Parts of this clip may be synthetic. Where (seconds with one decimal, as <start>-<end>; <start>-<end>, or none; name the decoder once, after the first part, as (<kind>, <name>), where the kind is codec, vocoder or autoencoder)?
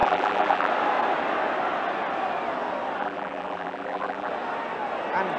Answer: 0.0-0.7 (vocoder, BigVGAN v2); 3.0-4.3